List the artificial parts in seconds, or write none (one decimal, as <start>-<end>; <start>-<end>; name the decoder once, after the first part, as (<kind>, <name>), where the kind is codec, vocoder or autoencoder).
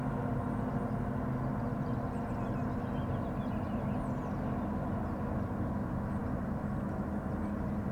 none